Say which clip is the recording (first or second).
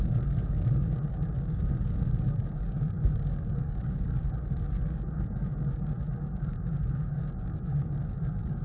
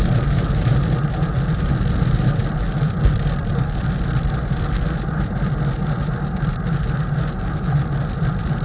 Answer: second